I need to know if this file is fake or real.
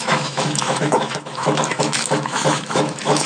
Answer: fake